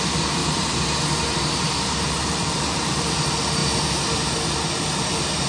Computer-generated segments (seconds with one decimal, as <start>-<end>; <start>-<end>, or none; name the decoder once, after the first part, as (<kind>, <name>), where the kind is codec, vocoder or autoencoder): 0.0-0.4 (vocoder, BigVGAN v2); 2.0-3.6; 5.0-5.5